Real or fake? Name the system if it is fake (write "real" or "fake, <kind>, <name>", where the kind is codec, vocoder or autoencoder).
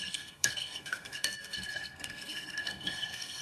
fake, codec, SNAC